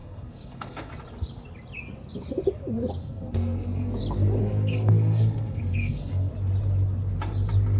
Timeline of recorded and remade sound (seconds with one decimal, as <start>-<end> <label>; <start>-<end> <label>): 0.0-0.9 remade; 0.9-3.0 recorded; 3.0-4.0 remade; 4.0-4.4 recorded; 4.4-6.3 remade; 6.3-7.8 recorded